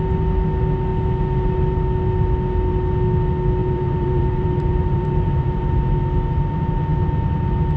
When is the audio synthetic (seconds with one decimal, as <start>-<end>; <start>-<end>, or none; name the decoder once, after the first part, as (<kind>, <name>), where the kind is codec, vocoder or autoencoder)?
3.6-5.6 (vocoder, BigVGAN v2)